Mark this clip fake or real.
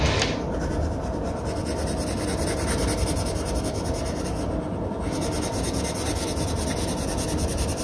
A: real